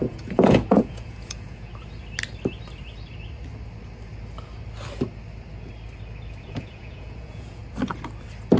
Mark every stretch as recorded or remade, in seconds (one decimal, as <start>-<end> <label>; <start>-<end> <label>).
0.0-1.7 remade; 1.7-6.4 recorded; 6.4-7.6 remade; 7.6-8.6 recorded